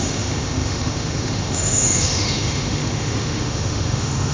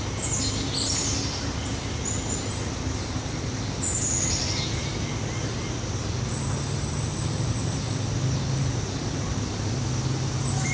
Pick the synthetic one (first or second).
first